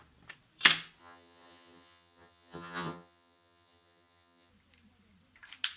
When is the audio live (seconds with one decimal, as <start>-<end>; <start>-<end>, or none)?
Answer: 0.0-1.0; 4.5-5.8